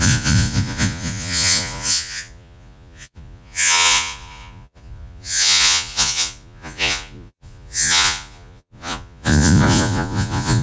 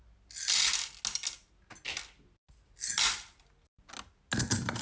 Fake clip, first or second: first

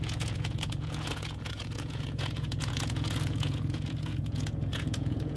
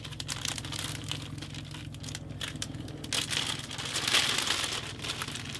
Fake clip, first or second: first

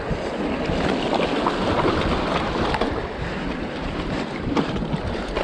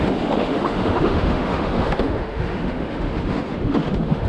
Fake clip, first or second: second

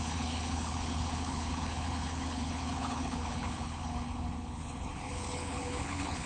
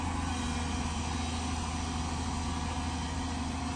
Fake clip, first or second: first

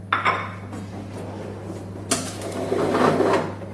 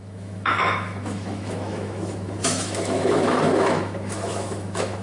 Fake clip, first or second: second